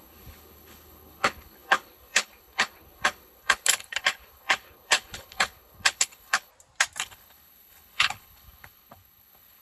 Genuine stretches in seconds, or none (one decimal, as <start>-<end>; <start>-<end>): 6.5-7.0